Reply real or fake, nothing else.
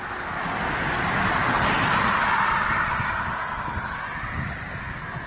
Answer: real